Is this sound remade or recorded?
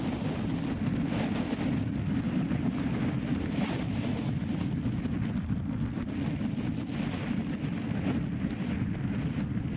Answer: recorded